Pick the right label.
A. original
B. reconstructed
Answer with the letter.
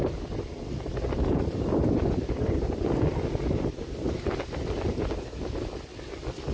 A